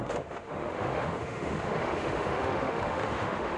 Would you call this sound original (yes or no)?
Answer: no